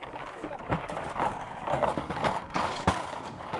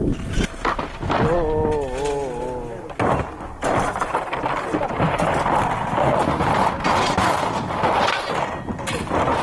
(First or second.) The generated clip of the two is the first